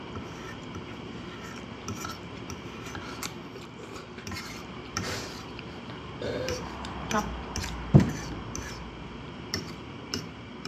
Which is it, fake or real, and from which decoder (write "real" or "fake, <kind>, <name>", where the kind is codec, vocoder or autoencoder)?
fake, vocoder, BigVGAN v2